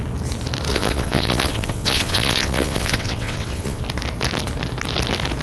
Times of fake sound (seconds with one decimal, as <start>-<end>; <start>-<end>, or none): 0.7-3.8